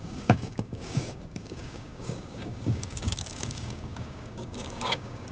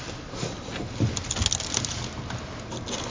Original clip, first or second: second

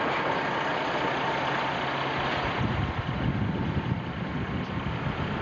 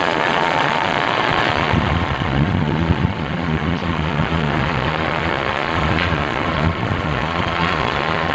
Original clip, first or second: first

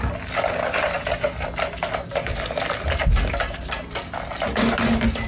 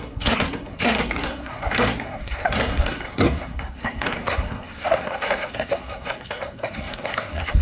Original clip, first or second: first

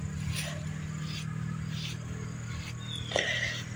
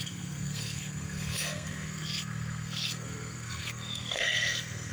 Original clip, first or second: first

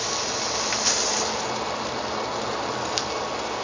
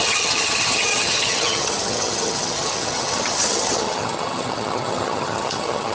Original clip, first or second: first